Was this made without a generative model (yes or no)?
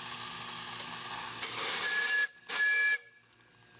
yes